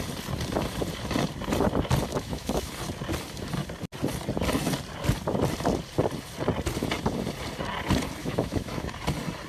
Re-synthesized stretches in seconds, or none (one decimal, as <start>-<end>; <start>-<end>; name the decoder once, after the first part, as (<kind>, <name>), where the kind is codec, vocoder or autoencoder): 2.1-2.7 (autoencoder, DAC-VAE); 8.2-8.9